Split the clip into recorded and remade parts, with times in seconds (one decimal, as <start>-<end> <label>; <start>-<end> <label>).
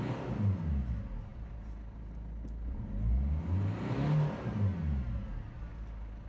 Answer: 0.0-6.3 recorded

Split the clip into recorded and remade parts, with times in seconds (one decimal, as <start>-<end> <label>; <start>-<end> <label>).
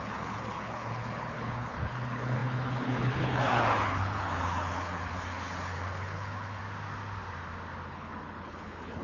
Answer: 0.0-6.6 remade; 6.6-7.9 recorded; 7.9-9.0 remade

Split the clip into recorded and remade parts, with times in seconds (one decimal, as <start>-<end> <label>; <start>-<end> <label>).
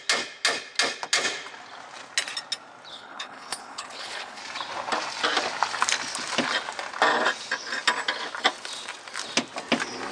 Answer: 0.0-2.9 recorded; 2.9-4.4 remade; 4.4-10.1 recorded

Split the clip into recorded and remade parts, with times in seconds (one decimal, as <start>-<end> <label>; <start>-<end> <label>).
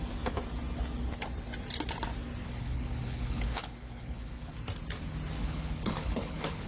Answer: 0.0-2.4 recorded; 2.4-4.5 remade; 4.5-5.4 recorded; 5.4-6.7 remade